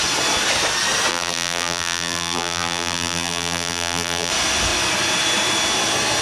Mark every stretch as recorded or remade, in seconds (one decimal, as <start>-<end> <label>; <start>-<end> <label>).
0.0-1.1 recorded; 1.1-4.3 remade; 4.3-6.2 recorded